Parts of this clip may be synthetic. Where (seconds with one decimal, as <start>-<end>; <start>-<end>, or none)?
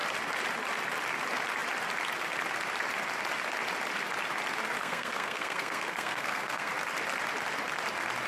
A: 4.8-6.7